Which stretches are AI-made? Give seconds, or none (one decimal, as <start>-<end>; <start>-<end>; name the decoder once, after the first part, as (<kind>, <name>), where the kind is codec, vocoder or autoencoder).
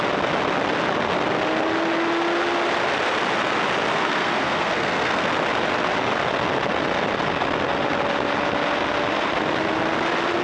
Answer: 3.9-5.3 (codec, SNAC)